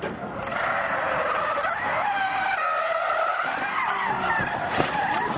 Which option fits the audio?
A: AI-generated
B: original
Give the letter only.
B